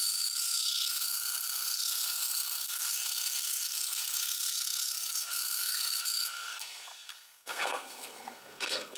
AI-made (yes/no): yes